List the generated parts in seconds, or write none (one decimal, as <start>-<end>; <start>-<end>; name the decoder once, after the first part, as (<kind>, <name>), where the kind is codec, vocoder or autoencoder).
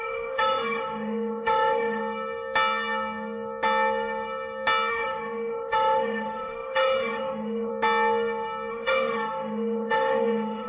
0.0-2.0 (autoencoder, DAC-VAE); 4.9-7.7; 8.7-10.7